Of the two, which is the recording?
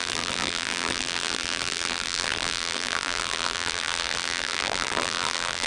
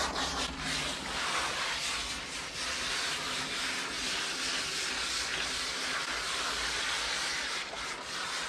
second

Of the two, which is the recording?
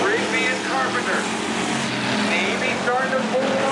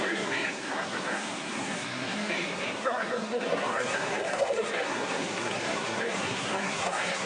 first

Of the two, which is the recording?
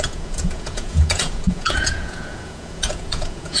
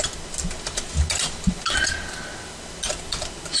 second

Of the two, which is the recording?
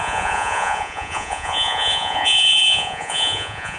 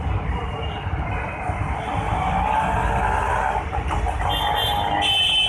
second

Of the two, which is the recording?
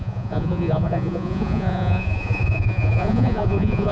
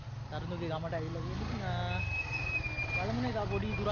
second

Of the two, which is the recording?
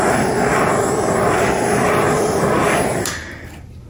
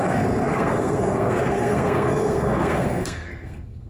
first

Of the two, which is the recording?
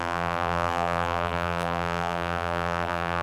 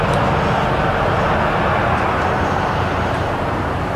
second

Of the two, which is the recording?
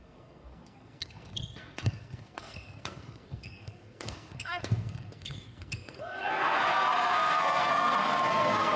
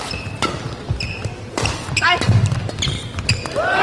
second